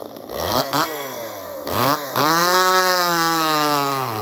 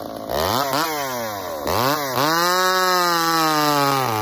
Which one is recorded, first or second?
second